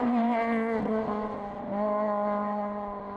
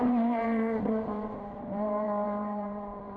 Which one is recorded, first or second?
first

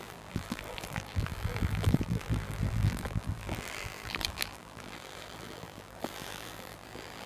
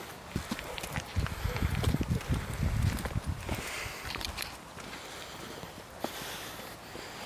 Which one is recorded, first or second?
second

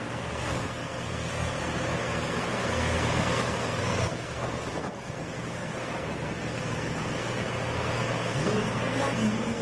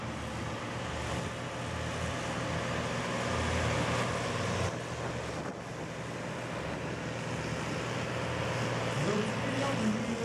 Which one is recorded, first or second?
second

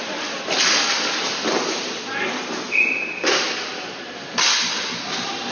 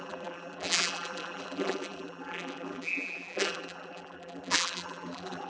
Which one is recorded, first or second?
first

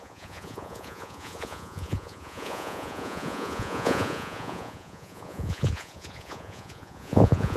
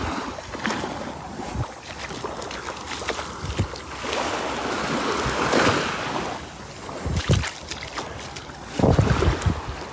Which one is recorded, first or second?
second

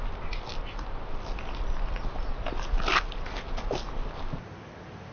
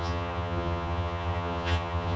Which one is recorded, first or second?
first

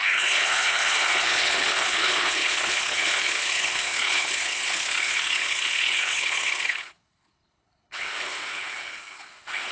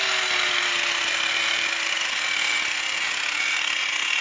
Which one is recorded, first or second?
second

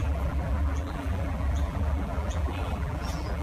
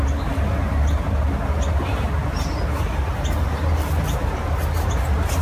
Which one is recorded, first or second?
second